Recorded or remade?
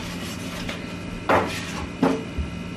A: recorded